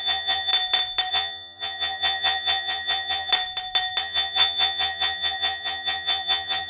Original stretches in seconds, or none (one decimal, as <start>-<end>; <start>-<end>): 0.5-1.1; 3.3-4.0